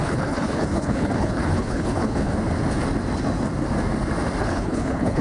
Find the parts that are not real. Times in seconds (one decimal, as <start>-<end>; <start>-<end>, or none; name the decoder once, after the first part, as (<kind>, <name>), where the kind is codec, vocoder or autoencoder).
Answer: 0.0-2.3 (codec, HILCodec); 4.4-5.2